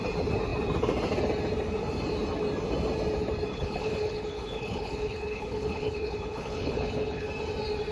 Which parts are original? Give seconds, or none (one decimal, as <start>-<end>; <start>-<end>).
0.0-3.5; 7.3-7.9